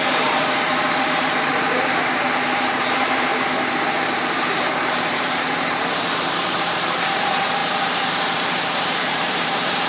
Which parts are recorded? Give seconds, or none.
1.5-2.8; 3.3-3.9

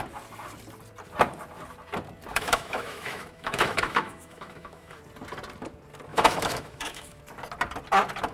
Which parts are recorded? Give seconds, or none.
0.0-2.3; 5.0-6.1; 7.2-8.3

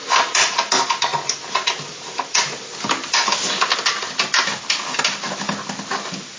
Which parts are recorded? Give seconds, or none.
0.0-6.4

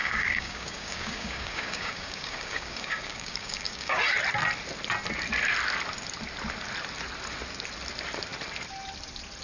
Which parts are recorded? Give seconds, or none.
4.0-9.4